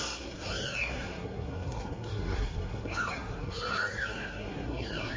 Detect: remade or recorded remade